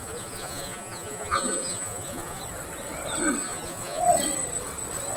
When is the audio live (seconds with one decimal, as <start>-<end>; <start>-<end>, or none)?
2.4-3.4; 4.0-5.2